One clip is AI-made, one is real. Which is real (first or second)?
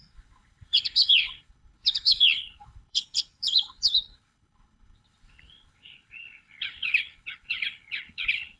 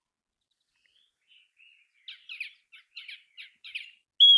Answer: second